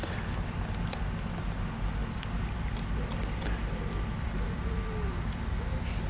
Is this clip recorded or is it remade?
recorded